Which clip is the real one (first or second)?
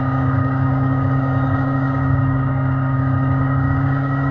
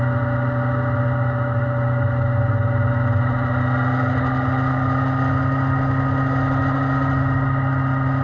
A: second